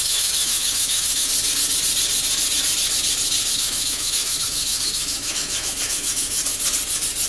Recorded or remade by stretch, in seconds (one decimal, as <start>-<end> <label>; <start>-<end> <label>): 0.0-1.3 remade; 1.3-3.5 recorded; 3.5-6.4 remade; 6.4-7.3 recorded